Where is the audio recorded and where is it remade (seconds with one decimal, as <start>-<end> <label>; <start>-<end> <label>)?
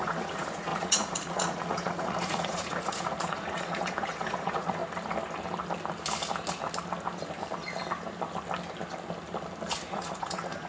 0.0-4.8 remade; 4.8-9.9 recorded; 9.9-10.7 remade